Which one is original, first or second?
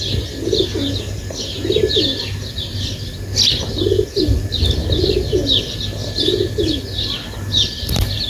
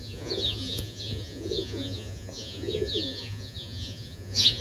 first